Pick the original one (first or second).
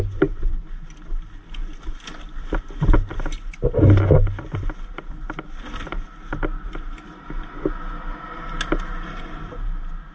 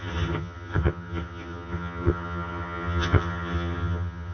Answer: first